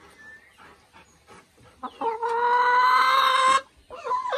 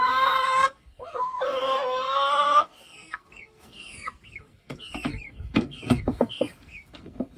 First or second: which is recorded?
first